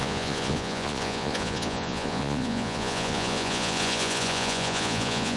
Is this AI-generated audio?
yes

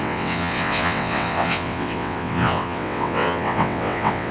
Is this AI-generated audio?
yes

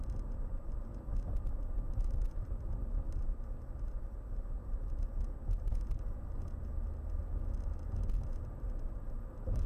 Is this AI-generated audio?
no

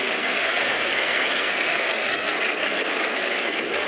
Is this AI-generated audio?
yes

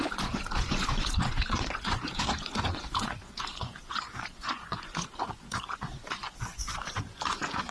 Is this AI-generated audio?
yes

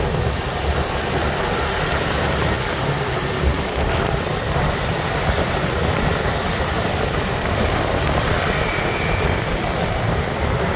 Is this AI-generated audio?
yes